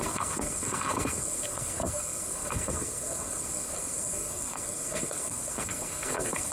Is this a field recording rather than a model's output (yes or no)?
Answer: no